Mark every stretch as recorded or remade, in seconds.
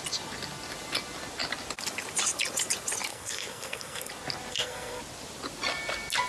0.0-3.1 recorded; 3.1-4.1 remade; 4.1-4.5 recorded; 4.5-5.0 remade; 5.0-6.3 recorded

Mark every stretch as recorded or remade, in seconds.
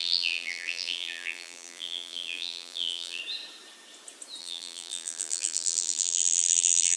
0.0-3.2 remade; 3.2-4.4 recorded; 4.4-7.0 remade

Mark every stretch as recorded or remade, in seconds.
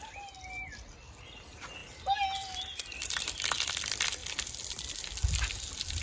0.0-6.0 recorded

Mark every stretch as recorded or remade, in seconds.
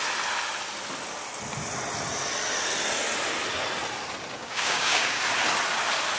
0.0-4.4 recorded; 4.4-5.2 remade; 5.2-6.2 recorded